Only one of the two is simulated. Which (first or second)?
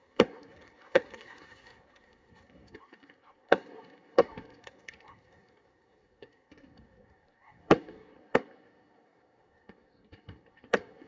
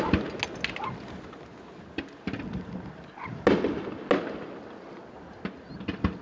first